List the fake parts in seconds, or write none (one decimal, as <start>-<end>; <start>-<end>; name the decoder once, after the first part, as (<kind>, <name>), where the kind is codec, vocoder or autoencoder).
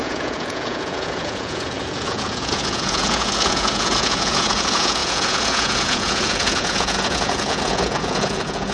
0.0-8.7 (vocoder, Vocos)